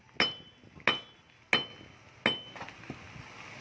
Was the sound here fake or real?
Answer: real